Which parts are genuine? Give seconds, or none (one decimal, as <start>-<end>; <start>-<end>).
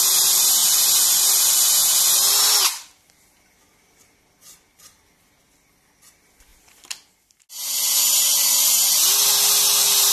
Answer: 0.0-0.6; 1.2-10.1